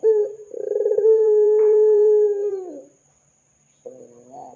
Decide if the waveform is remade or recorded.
remade